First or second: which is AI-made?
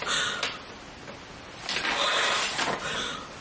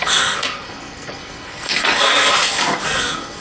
second